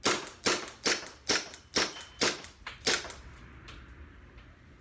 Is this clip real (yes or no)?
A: yes